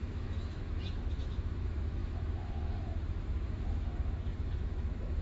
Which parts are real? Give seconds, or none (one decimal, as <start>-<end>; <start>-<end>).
none